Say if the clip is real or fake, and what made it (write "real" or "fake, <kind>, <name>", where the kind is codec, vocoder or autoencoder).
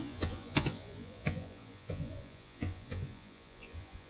fake, vocoder, Vocos